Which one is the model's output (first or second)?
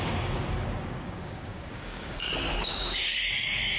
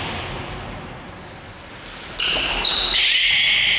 first